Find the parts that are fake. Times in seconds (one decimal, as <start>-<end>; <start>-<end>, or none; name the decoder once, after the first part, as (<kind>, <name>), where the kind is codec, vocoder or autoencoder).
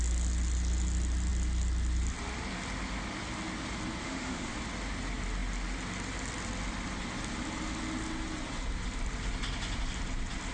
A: 4.0-4.5 (autoencoder, DAC-VAE)